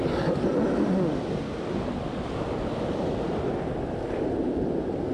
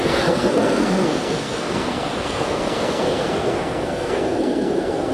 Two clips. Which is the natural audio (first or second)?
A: first